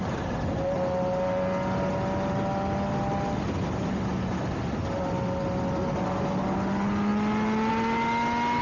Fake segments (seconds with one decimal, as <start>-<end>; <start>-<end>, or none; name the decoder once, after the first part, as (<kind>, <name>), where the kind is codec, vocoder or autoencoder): none